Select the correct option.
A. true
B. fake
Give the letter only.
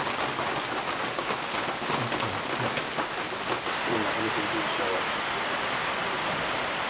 A